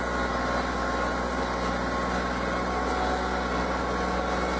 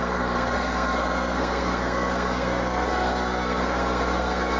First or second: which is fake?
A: second